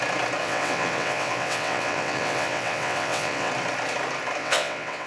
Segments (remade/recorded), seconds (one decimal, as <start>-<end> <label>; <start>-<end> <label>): 0.0-0.4 recorded; 0.4-3.5 remade; 3.5-4.4 recorded; 4.4-5.1 remade

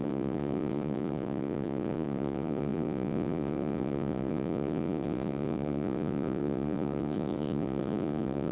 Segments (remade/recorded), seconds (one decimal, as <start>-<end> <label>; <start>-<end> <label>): 0.0-8.5 remade

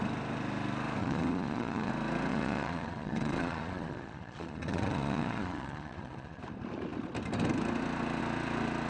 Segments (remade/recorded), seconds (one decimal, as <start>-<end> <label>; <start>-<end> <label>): 0.0-1.0 recorded; 1.0-1.9 remade; 1.9-2.3 recorded; 2.3-6.4 remade; 6.4-8.9 recorded

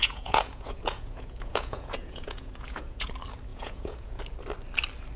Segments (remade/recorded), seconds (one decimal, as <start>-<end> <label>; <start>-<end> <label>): 0.0-3.1 remade; 3.1-3.5 recorded; 3.5-4.2 remade; 4.2-5.2 recorded

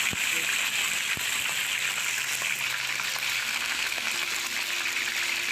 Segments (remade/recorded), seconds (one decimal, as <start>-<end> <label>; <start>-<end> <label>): 0.0-3.4 recorded; 3.4-4.1 remade; 4.1-5.5 recorded